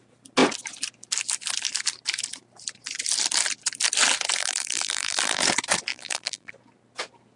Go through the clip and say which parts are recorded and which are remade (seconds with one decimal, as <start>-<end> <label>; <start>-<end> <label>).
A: 0.0-4.4 recorded; 4.4-5.4 remade; 5.4-5.9 recorded; 5.9-6.5 remade; 6.5-7.4 recorded